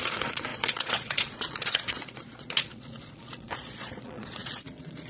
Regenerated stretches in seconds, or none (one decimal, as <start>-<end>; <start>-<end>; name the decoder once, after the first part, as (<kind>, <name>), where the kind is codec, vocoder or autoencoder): 0.0-5.1 (vocoder, Vocos)